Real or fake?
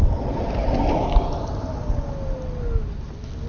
real